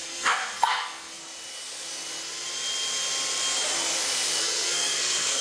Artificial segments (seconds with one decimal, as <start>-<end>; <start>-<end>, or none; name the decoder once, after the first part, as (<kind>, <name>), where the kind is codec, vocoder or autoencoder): 0.0-1.2 (codec, SNAC); 4.4-5.4